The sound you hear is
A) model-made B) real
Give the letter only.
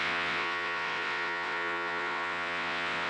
A